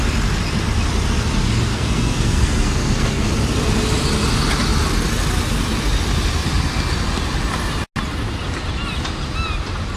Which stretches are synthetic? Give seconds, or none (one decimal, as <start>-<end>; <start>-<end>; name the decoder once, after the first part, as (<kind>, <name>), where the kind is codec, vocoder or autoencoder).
1.7-3.3 (codec, SNAC)